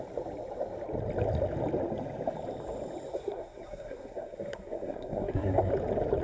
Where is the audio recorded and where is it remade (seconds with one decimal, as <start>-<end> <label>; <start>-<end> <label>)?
0.0-3.1 recorded; 3.1-5.7 remade; 5.7-6.2 recorded